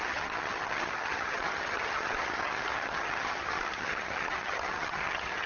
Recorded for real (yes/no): no